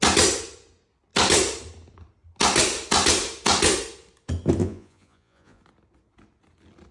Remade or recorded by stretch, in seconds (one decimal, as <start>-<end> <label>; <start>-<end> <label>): 0.0-4.6 recorded; 4.6-5.6 remade; 5.6-6.9 recorded